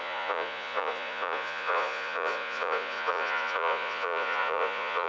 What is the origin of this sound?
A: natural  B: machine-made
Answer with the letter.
B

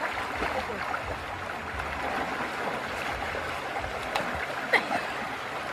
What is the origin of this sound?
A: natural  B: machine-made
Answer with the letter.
A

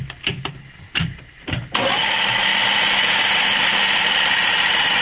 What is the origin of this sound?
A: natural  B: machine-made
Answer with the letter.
A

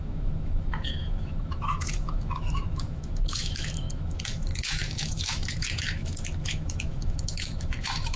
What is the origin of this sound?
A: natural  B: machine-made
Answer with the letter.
B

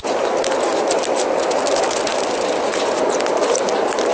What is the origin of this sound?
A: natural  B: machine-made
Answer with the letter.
A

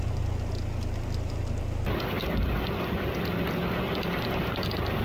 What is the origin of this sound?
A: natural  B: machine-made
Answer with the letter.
A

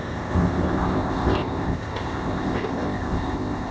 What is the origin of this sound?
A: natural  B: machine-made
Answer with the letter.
B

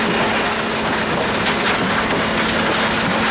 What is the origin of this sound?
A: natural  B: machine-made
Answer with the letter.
A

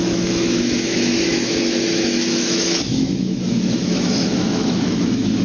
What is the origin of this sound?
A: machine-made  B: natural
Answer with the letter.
A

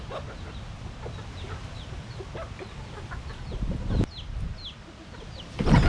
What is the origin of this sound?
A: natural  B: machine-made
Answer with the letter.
A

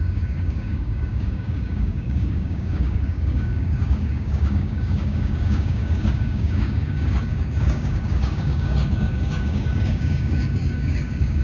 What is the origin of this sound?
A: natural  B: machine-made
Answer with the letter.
B